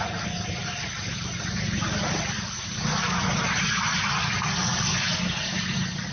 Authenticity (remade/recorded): recorded